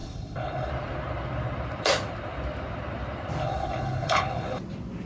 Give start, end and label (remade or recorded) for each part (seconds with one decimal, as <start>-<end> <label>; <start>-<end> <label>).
0.0-0.7 remade; 0.7-3.4 recorded; 3.4-4.6 remade; 4.6-5.1 recorded